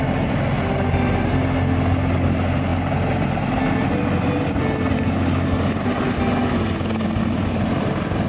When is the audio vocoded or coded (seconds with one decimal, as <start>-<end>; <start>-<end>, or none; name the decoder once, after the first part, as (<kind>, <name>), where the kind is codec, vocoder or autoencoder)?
none

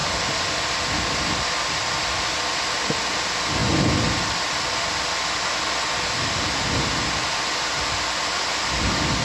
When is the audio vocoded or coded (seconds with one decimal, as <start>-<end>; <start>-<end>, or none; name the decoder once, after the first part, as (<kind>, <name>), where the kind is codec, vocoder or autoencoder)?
none

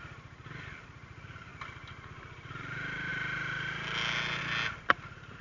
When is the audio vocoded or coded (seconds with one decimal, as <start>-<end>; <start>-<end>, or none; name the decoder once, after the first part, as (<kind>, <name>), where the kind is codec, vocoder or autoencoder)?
none